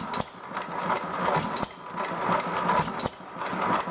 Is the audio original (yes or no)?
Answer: yes